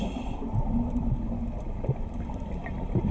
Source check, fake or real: real